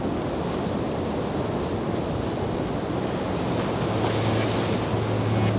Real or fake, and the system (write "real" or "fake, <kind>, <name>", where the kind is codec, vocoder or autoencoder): real